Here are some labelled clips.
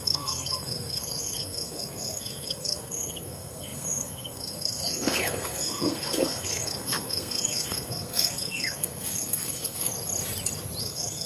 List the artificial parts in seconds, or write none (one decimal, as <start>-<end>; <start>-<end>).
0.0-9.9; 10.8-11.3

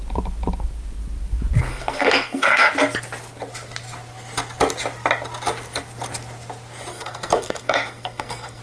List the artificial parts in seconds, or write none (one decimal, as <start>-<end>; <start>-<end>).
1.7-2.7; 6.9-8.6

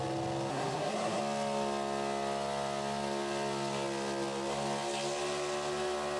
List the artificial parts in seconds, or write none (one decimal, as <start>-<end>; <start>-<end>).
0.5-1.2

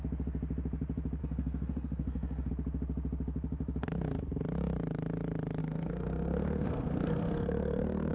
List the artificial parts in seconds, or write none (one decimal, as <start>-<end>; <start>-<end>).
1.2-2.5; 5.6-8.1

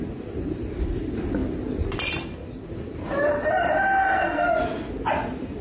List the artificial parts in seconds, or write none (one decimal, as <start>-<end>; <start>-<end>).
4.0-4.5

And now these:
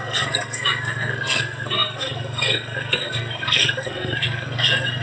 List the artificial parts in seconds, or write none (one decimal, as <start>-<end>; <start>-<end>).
0.0-5.0

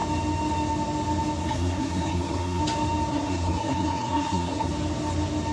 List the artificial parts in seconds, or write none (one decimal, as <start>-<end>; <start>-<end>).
1.4-2.6; 3.1-4.7

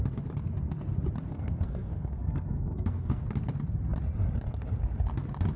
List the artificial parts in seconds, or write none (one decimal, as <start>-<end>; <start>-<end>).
1.3-3.2